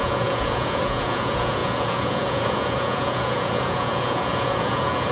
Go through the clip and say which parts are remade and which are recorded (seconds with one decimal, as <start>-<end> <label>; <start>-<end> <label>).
0.0-5.1 remade